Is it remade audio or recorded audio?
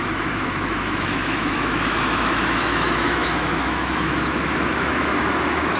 remade